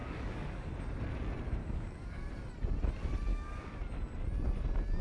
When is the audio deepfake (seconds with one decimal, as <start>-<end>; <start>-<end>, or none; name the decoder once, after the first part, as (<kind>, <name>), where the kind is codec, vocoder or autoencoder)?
0.0-0.7 (codec, DAC); 1.6-2.3; 3.3-3.8